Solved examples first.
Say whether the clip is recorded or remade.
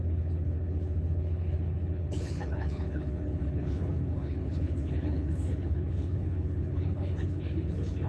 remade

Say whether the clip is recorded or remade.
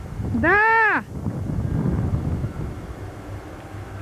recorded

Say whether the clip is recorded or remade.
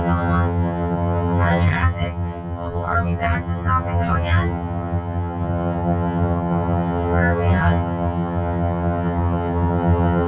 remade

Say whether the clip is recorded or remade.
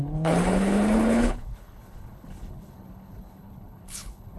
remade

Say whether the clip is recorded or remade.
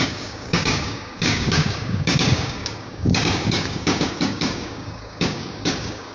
remade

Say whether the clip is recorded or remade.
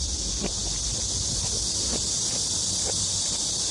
recorded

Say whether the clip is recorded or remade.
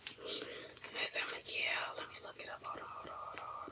remade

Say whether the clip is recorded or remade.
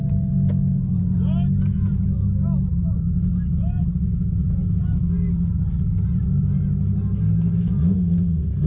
recorded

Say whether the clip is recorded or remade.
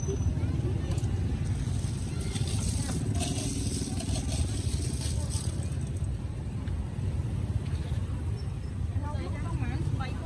recorded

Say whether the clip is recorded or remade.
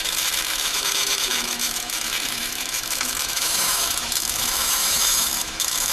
remade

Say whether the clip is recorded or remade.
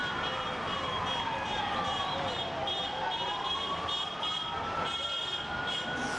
recorded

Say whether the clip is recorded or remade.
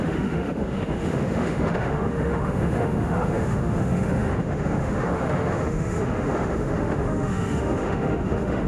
remade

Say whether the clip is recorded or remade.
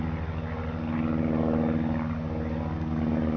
recorded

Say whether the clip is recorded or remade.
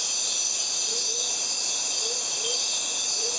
recorded